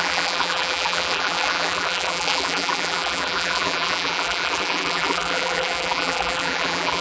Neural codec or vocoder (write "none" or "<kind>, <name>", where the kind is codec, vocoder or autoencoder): vocoder, BigVGAN v2